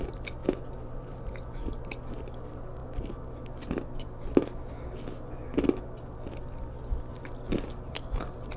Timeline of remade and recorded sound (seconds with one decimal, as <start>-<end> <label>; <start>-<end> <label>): 0.0-8.6 recorded